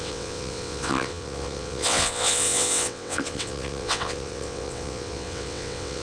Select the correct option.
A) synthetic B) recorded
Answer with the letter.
A